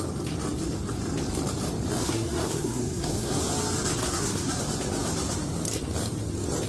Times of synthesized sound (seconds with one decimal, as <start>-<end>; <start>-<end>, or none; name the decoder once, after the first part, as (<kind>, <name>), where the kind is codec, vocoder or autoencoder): 2.0-3.4 (codec, SNAC); 4.0-4.6